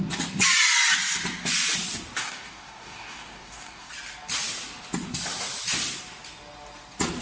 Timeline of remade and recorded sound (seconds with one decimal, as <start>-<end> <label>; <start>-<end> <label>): 0.0-2.2 recorded; 2.2-3.9 remade; 3.9-7.2 recorded